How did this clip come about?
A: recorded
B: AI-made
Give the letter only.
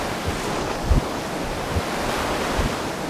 A